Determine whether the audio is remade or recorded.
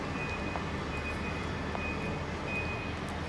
recorded